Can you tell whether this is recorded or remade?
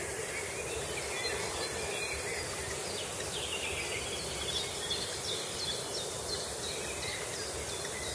recorded